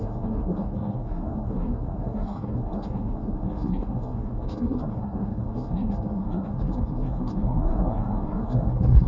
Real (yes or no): no